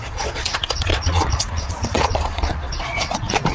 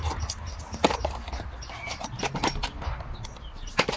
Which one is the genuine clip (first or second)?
second